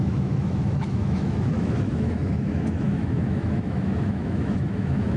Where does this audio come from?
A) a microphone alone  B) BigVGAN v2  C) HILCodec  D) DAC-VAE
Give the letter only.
D